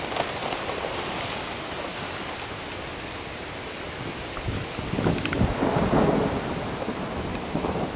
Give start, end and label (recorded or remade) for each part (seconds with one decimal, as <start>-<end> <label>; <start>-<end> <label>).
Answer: 0.0-0.4 recorded; 0.4-1.1 remade; 1.1-7.3 recorded; 7.3-8.0 remade